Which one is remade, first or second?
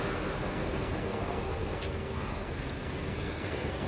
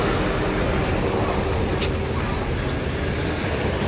first